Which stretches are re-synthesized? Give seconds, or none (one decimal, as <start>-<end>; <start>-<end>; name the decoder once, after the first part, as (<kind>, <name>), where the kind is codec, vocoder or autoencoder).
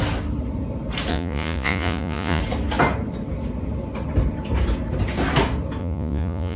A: 1.1-2.4 (vocoder, Vocos); 5.8-6.6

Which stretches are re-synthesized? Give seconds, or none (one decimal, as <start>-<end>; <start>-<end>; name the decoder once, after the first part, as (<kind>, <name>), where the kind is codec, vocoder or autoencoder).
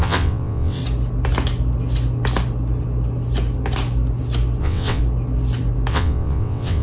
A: 0.0-0.8 (vocoder, WaveNeXt); 4.6-5.0; 5.9-6.8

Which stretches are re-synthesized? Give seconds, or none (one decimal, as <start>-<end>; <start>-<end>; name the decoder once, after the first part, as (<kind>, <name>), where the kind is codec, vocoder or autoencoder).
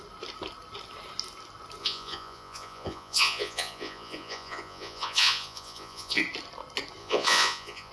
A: 1.8-6.2 (vocoder, Vocos); 7.0-7.9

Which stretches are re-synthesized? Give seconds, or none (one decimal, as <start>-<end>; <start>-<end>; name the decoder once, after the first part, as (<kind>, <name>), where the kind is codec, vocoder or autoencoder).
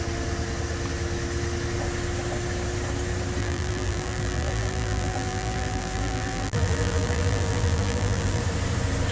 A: 3.4-8.4 (vocoder, BigVGAN v2)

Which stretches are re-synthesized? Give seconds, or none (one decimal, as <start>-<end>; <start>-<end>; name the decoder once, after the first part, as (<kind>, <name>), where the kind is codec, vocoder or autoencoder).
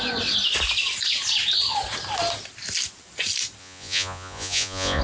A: 3.6-5.0 (vocoder, Vocos)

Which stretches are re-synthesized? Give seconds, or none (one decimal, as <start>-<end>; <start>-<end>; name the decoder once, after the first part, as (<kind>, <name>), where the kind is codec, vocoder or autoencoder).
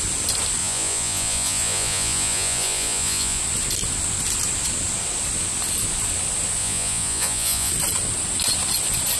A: 0.6-3.4 (vocoder, Vocos); 6.6-7.7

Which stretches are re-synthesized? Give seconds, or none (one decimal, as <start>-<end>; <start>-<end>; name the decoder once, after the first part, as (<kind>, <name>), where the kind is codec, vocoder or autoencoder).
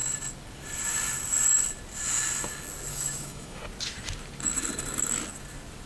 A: 2.9-3.6 (autoencoder, DAC-VAE)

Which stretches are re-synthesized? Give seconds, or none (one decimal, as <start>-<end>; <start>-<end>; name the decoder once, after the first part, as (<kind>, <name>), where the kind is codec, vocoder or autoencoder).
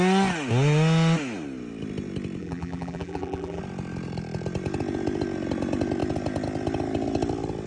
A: 2.4-3.6 (vocoder, BigVGAN v2)